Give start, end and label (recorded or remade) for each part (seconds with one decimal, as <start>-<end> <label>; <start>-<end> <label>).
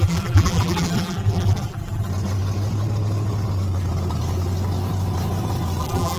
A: 0.0-2.1 remade; 2.1-5.8 recorded; 5.8-6.2 remade